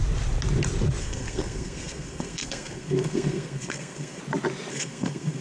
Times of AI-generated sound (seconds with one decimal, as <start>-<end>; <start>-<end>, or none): 1.0-4.2; 4.7-5.4